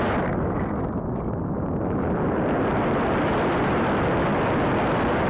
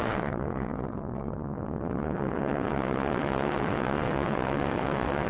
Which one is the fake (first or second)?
second